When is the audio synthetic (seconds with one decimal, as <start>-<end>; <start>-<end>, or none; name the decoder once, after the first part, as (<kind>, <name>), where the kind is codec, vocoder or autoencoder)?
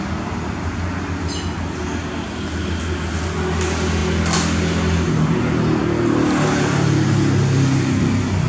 none